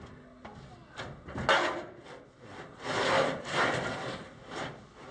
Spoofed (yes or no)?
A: no